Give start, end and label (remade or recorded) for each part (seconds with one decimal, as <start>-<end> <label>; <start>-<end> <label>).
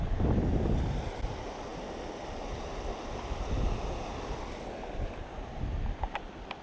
0.0-6.6 recorded